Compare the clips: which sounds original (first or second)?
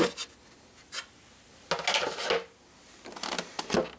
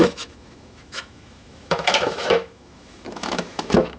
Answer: first